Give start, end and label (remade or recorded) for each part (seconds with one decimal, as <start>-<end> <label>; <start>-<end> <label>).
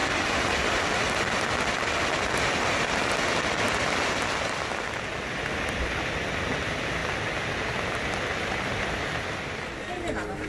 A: 0.0-10.5 recorded